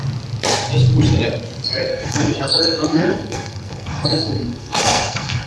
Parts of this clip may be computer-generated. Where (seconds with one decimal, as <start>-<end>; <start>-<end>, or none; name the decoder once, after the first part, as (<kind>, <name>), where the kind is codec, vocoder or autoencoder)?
1.9-5.5 (codec, SNAC)

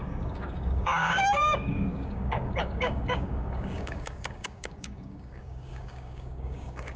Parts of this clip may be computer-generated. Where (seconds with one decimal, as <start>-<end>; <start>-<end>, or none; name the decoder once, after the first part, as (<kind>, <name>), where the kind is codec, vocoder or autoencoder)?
0.0-7.0 (codec, DAC)

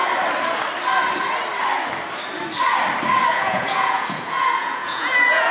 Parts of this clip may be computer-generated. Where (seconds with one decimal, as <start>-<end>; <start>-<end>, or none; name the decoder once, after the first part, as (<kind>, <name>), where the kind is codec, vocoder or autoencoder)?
3.3-5.5 (vocoder, Vocos)

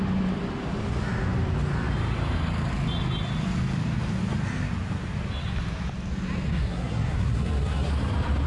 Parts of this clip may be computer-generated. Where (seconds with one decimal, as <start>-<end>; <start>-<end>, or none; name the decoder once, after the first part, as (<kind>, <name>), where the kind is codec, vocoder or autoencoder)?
6.5-7.9 (codec, SNAC)

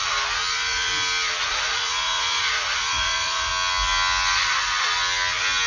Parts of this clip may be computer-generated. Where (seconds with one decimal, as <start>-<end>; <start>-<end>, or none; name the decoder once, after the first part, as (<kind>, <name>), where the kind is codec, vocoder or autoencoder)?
0.5-0.9 (vocoder, Vocos); 1.5-3.5